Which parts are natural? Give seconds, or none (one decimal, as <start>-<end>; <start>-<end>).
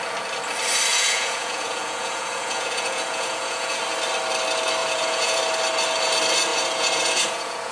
0.0-0.9; 3.8-4.8; 5.4-6.5